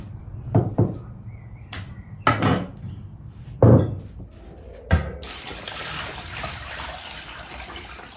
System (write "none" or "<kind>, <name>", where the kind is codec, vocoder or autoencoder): vocoder, BigVGAN v2